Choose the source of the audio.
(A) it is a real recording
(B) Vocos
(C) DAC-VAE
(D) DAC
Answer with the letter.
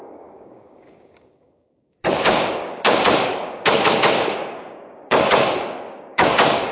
D